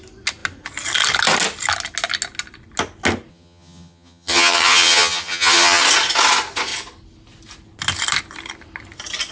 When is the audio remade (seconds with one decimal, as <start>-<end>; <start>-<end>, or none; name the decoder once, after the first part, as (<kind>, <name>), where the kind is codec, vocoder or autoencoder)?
3.3-5.8 (vocoder, HiFi-GAN)